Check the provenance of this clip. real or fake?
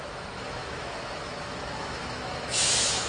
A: fake